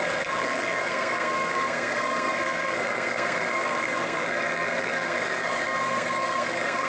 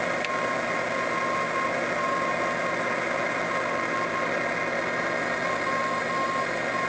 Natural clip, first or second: second